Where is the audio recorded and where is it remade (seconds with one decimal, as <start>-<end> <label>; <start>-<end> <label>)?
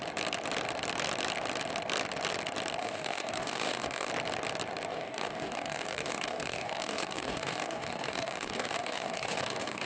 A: 0.0-2.8 recorded; 2.8-4.1 remade; 4.1-4.9 recorded; 4.9-9.9 remade